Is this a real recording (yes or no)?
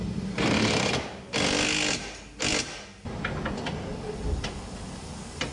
yes